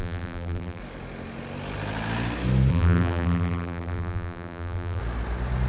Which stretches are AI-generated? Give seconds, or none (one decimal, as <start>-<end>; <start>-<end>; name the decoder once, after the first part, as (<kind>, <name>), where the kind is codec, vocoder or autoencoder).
0.0-0.8 (vocoder, BigVGAN v2); 2.7-5.0